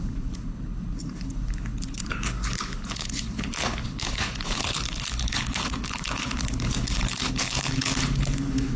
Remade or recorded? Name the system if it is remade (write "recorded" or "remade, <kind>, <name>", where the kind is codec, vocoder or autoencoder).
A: remade, codec, HILCodec